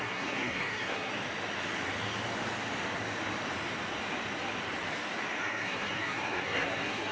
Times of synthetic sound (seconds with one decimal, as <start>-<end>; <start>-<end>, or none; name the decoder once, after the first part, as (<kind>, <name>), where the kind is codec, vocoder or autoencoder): 0.0-1.1 (codec, SNAC); 5.4-7.1